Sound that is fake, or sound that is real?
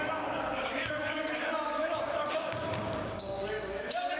fake